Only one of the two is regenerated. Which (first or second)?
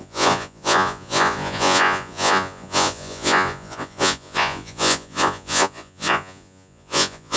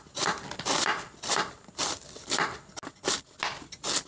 first